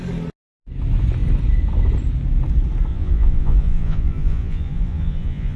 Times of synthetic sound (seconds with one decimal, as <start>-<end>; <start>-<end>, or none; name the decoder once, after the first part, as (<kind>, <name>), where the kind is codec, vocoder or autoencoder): 2.9-5.6 (vocoder, Vocos)